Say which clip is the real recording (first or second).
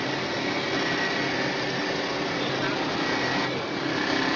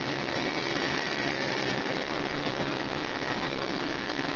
first